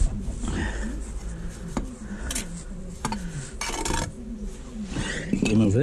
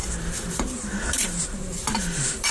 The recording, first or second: first